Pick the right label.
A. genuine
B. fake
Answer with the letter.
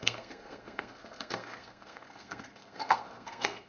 B